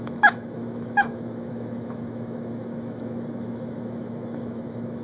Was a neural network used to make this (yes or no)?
yes